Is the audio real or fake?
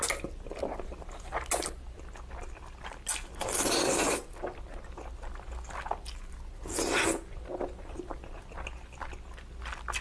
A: real